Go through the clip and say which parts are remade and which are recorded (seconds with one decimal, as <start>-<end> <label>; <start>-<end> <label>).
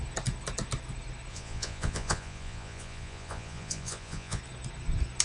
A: 0.0-1.3 recorded; 1.3-4.4 remade; 4.4-5.2 recorded